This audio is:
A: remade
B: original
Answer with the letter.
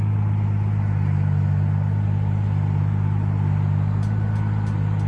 B